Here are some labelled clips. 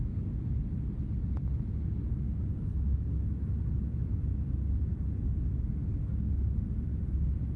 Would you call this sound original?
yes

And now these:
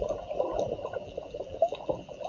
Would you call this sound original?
no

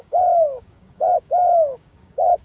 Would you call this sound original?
no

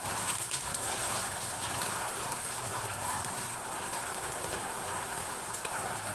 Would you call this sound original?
no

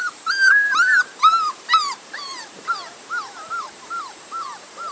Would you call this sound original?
no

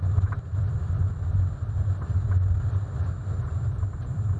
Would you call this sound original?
no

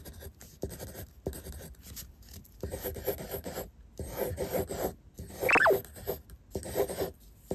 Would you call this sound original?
yes